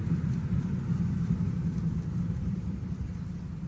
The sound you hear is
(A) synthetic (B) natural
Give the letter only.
B